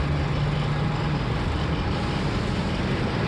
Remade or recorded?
recorded